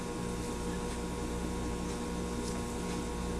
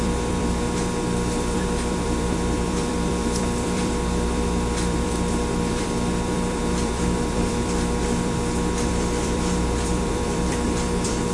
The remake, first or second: second